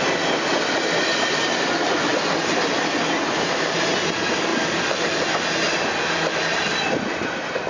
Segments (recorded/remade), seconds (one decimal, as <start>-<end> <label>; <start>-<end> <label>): 0.0-7.7 recorded